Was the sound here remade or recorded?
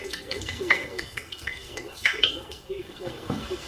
remade